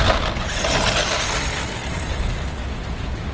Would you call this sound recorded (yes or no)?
yes